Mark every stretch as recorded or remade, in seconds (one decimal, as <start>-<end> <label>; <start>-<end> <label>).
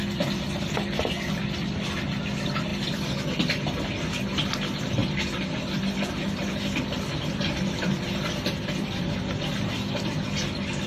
0.0-2.7 recorded; 2.7-3.3 remade; 3.3-5.0 recorded; 5.0-9.4 remade; 9.4-10.9 recorded